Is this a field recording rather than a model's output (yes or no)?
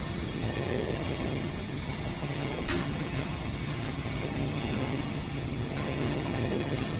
no